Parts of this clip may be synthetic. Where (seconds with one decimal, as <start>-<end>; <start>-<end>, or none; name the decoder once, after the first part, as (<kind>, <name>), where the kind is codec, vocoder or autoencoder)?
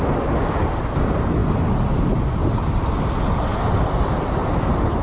2.4-2.9 (vocoder, BigVGAN v2); 3.5-4.4